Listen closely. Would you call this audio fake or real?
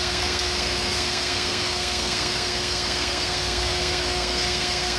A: fake